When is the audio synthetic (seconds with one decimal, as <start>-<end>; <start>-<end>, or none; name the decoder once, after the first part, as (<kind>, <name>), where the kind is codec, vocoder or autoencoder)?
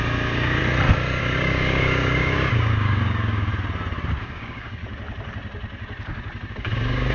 0.0-0.6 (codec, DAC); 1.2-3.5; 4.2-4.8; 6.5-7.1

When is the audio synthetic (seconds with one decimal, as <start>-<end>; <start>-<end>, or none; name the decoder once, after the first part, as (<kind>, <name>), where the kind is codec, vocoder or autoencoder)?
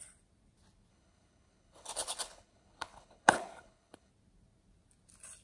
0.9-4.1 (codec, HILCodec)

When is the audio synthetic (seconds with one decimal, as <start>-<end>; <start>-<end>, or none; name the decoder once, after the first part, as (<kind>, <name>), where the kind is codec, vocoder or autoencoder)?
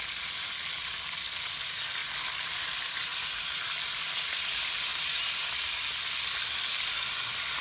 3.1-3.6 (vocoder, BigVGAN v2); 4.9-5.7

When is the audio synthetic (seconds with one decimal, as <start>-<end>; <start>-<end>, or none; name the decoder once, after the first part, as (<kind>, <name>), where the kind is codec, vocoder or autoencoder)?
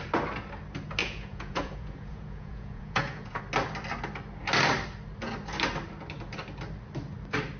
1.0-3.4 (vocoder, Vocos)